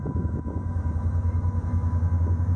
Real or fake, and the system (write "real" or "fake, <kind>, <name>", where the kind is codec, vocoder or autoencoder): fake, autoencoder, DAC-VAE